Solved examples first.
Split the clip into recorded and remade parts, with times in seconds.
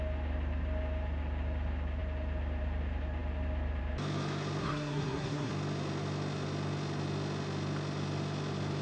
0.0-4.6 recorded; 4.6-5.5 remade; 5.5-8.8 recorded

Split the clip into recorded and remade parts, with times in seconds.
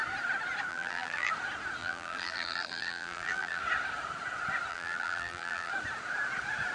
0.0-0.7 recorded; 0.7-1.3 remade; 1.3-1.8 recorded; 1.8-3.6 remade; 3.6-4.7 recorded; 4.7-5.7 remade; 5.7-6.7 recorded